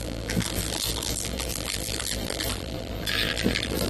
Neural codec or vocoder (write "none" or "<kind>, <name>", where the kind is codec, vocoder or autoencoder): vocoder, BigVGAN v2